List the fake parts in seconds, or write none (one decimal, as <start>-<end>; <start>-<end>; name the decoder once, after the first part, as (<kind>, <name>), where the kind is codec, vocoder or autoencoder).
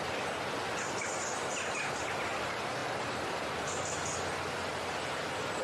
none